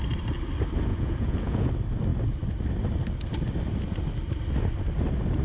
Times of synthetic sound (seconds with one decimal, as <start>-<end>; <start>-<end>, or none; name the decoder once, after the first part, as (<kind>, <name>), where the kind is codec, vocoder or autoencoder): 0.9-1.7 (vocoder, Vocos)